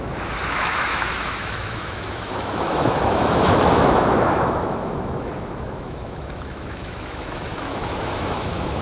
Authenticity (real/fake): fake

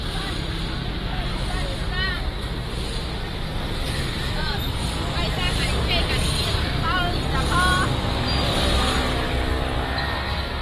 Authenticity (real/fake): real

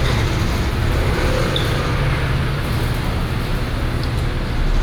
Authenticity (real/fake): real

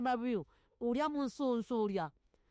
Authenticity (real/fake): fake